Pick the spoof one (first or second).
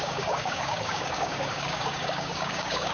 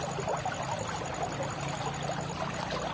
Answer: first